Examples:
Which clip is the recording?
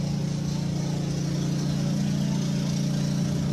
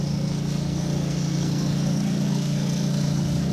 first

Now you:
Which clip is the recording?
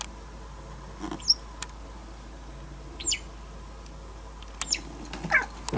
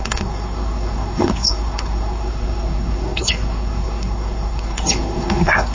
first